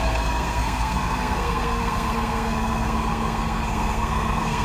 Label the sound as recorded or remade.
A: remade